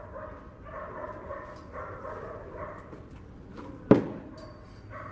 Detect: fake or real real